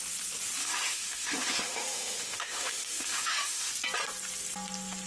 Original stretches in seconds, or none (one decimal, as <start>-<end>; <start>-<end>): 0.0-0.6; 3.7-5.1